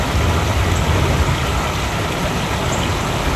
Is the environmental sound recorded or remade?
recorded